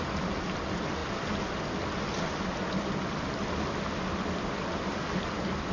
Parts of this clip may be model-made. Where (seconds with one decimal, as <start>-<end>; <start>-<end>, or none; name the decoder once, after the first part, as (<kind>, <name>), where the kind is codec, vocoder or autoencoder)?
none